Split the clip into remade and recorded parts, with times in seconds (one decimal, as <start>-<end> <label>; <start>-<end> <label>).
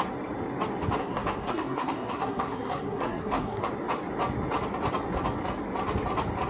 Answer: 0.0-1.0 recorded; 1.0-3.7 remade; 3.7-6.5 recorded